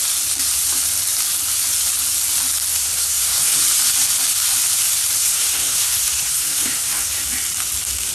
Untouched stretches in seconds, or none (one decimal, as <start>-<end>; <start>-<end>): 0.0-2.7; 3.6-5.2; 7.2-8.1